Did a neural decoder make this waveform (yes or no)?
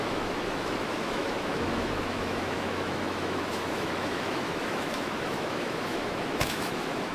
yes